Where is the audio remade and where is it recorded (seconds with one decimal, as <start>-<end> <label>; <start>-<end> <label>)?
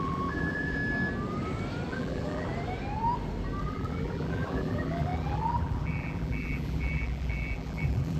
0.0-0.8 remade; 0.8-1.9 recorded; 1.9-2.5 remade; 2.5-3.6 recorded; 3.6-8.2 remade